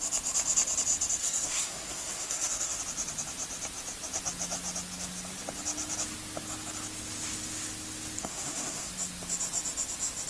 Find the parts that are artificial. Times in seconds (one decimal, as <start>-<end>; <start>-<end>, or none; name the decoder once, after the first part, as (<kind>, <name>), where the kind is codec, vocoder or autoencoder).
1.2-2.8 (codec, SNAC); 8.2-8.9